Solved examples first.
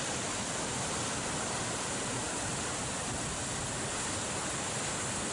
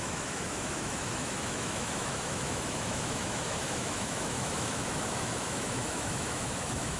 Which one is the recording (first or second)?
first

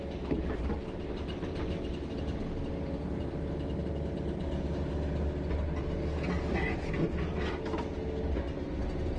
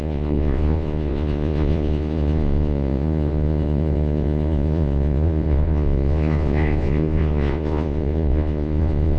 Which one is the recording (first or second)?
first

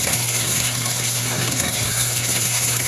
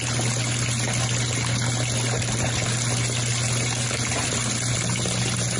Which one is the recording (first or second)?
second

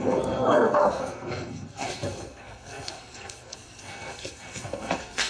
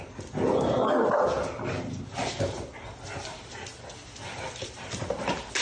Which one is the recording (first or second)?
second